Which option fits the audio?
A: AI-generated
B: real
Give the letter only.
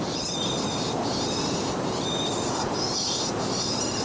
A